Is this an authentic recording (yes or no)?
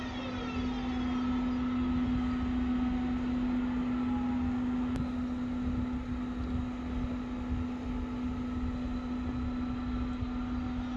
yes